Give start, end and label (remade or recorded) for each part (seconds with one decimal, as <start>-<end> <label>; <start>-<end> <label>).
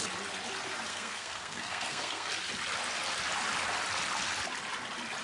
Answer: 0.0-0.9 recorded; 0.9-2.3 remade; 2.3-5.2 recorded